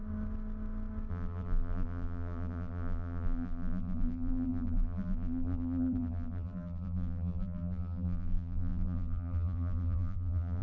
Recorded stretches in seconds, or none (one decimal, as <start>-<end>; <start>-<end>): 0.0-1.1